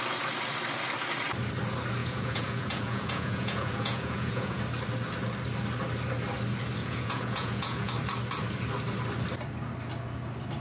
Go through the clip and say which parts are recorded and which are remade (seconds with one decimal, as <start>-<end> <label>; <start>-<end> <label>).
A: 0.0-2.0 recorded; 2.0-4.6 remade; 4.6-6.8 recorded; 6.8-7.9 remade; 7.9-10.6 recorded